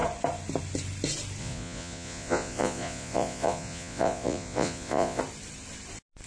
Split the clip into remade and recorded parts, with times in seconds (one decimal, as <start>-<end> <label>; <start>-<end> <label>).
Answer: 0.0-1.4 recorded; 1.4-5.2 remade; 5.2-6.3 recorded